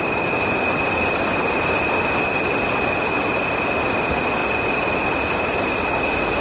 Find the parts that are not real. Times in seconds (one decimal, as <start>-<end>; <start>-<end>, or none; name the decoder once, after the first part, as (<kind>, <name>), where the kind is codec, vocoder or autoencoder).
none